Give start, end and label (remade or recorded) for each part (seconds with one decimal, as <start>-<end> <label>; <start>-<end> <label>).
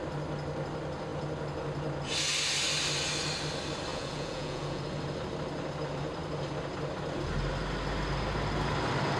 0.0-3.9 recorded; 3.9-4.8 remade; 4.8-9.2 recorded